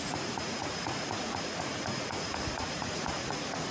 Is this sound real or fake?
fake